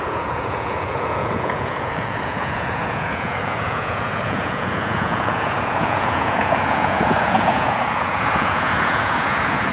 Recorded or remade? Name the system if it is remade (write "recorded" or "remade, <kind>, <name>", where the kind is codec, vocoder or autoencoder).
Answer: remade, vocoder, Vocos